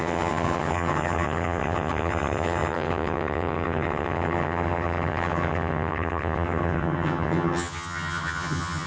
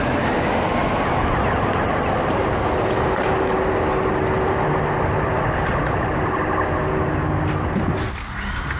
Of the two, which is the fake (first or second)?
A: first